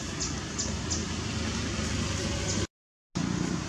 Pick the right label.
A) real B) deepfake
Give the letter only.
A